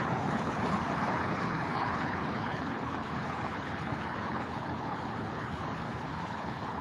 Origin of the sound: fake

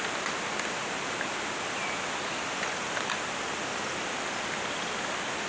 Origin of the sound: real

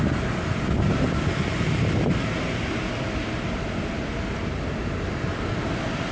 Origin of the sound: real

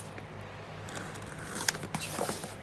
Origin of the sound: real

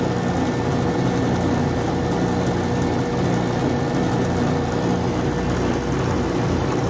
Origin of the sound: real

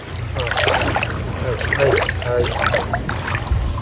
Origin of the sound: real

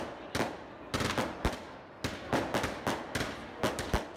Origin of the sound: real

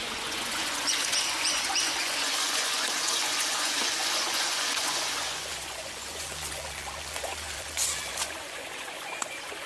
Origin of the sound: fake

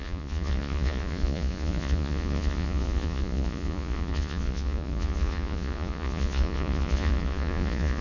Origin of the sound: fake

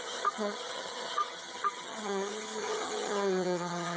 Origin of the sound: fake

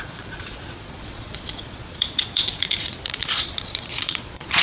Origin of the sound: fake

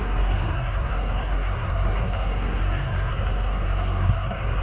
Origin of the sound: fake